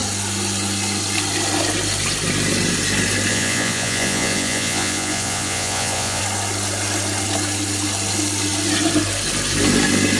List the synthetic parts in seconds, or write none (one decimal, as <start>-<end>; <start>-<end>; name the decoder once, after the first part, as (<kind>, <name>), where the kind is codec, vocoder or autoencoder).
3.3-6.2 (vocoder, Vocos)

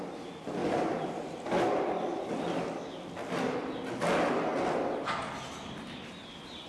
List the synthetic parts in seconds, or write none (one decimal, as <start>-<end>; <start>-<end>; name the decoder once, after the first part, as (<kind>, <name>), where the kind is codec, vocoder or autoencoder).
none